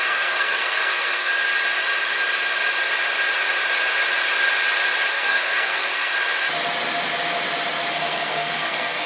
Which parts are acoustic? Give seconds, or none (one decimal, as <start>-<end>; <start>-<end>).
1.3-5.1; 6.1-7.9